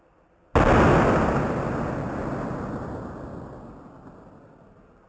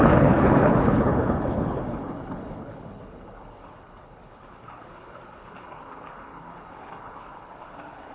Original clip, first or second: first